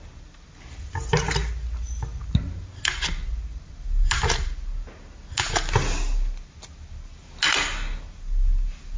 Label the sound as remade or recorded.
recorded